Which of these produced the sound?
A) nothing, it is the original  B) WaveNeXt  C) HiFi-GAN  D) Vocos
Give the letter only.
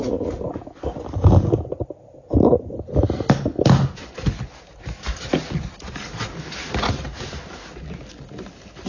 A